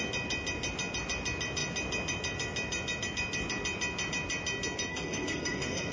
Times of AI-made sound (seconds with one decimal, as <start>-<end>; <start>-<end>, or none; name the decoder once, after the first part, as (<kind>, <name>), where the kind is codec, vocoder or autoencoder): 4.9-5.9 (codec, SNAC)